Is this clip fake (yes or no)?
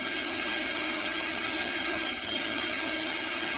yes